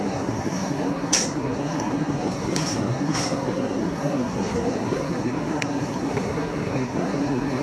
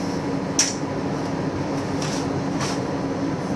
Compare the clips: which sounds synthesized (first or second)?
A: first